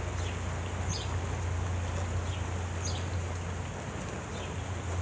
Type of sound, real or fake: real